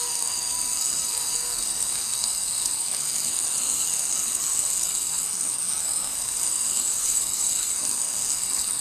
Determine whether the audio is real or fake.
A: fake